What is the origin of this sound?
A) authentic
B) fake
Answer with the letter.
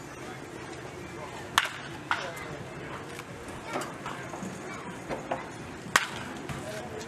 A